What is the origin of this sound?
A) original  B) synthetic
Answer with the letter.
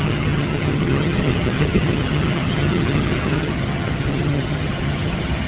B